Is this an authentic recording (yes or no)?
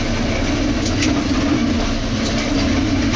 yes